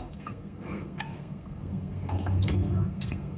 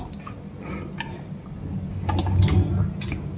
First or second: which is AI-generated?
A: first